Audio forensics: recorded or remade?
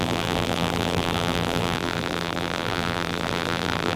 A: remade